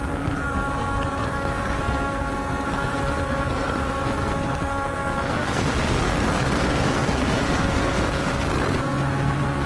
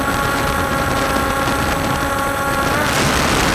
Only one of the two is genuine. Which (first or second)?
second